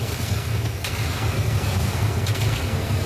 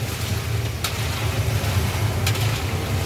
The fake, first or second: first